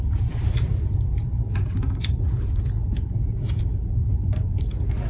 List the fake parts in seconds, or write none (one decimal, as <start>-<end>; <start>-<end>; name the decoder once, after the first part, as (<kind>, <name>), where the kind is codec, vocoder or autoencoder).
1.1-3.6 (vocoder, Vocos)